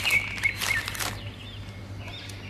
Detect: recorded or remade recorded